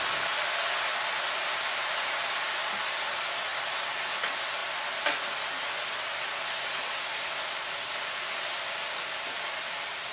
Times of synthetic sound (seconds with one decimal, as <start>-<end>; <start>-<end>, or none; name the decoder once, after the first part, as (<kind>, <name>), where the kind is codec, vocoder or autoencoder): none